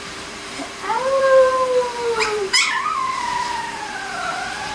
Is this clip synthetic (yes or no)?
yes